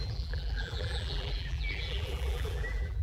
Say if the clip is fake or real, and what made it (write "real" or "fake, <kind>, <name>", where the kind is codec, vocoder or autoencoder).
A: fake, vocoder, BigVGAN v2